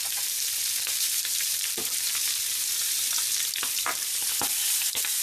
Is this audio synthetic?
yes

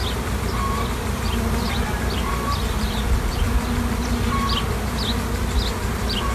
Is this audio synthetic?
no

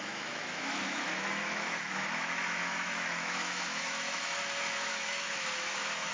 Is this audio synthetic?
yes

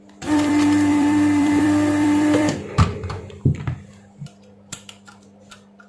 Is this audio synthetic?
yes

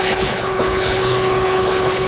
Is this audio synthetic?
yes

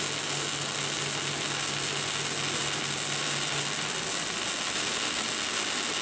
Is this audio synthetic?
no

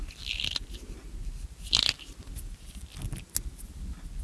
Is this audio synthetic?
no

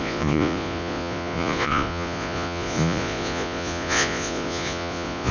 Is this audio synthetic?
yes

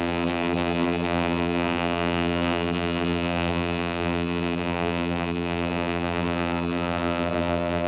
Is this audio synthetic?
yes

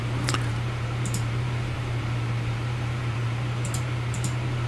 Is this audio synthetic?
yes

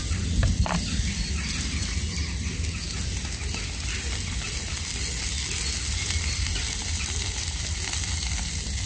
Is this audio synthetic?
no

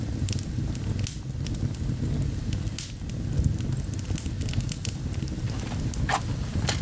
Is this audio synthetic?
no